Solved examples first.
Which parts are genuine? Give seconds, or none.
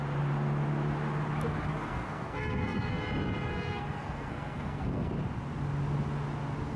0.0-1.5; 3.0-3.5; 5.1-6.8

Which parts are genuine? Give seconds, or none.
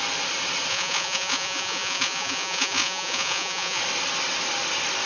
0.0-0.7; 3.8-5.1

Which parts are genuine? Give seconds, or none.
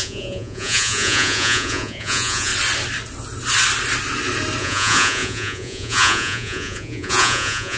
2.5-4.6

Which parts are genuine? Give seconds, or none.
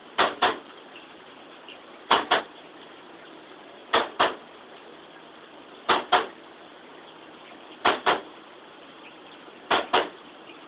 3.8-8.2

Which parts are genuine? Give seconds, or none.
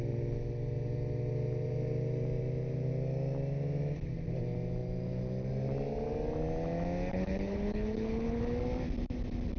0.0-7.1; 8.4-9.6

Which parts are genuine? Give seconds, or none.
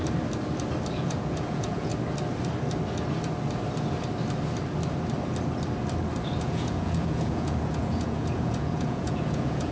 0.0-0.9; 1.9-6.4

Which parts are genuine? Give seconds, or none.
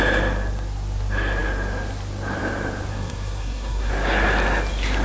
0.0-2.9; 3.9-5.0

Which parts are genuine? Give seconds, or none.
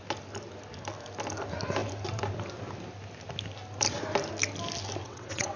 0.0-5.0